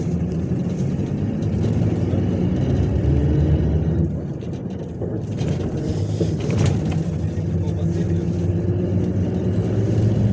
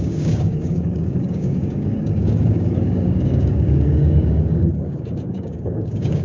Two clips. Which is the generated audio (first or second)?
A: second